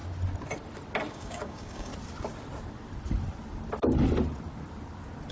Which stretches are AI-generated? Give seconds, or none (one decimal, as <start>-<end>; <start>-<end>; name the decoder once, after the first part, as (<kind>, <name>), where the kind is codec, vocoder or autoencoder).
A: 1.1-1.9 (codec, DAC)